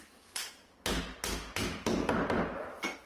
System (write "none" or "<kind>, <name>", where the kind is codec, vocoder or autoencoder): none